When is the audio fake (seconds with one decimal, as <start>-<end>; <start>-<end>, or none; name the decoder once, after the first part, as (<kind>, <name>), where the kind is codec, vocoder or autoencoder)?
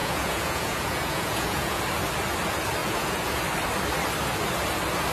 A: 0.0-1.8 (vocoder, Vocos); 2.8-3.4